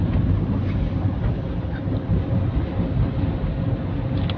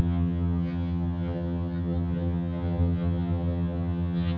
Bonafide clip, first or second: first